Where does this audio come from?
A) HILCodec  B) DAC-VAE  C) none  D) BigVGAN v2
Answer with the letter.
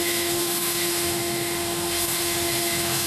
B